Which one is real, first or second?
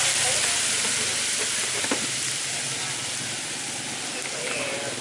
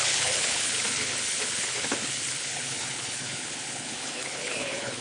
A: first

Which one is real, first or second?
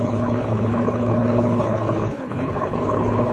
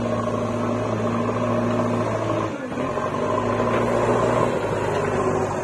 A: second